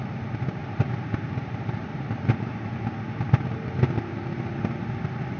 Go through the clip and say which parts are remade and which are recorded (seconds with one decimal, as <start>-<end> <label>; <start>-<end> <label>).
0.0-0.6 recorded; 0.6-2.8 remade; 2.8-5.4 recorded